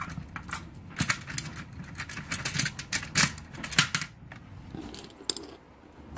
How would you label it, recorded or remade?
recorded